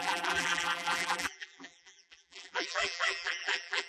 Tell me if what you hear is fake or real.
fake